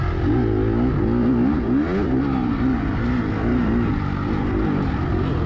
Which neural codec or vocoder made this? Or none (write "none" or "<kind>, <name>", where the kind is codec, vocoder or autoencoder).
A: none